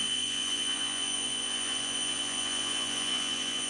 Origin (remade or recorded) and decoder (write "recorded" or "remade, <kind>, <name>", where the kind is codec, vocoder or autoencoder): remade, vocoder, Vocos